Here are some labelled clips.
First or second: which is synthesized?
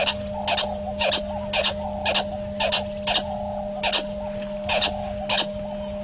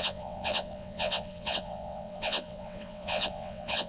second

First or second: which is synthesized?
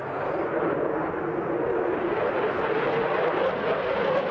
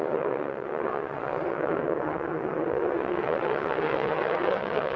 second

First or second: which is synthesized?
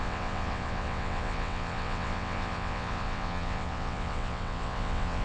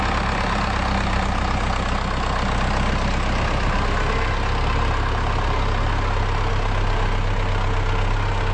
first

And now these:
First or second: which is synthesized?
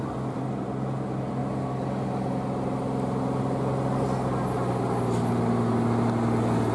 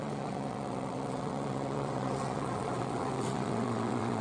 second